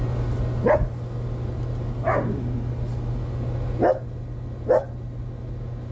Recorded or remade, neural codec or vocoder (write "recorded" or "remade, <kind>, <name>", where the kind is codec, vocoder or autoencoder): recorded